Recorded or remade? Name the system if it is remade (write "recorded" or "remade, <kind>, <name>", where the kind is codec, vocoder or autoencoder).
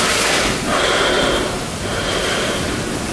recorded